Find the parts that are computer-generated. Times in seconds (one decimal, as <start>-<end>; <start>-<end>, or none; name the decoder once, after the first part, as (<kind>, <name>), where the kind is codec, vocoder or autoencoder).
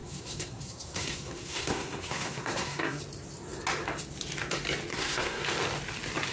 0.0-3.0 (codec, SNAC); 4.9-5.4